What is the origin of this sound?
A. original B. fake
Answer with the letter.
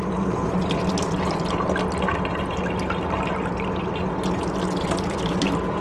A